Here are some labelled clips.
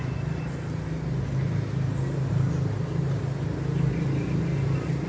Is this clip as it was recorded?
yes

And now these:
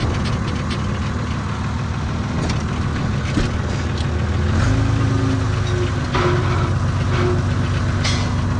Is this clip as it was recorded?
yes